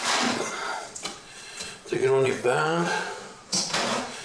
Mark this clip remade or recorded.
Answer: remade